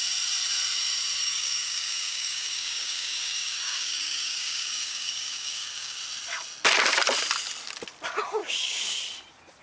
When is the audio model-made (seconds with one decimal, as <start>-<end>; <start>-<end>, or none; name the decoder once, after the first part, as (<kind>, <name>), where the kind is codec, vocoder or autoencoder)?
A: 1.2-6.0 (codec, DAC); 8.4-9.0